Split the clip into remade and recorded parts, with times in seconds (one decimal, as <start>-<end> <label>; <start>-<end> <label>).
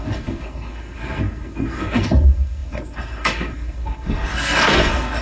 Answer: 0.0-5.2 remade